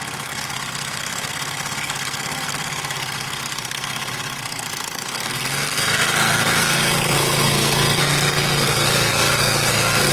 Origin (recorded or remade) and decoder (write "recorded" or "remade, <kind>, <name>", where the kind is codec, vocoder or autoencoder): remade, codec, SNAC